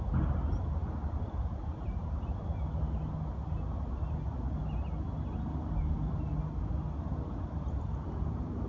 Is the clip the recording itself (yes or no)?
yes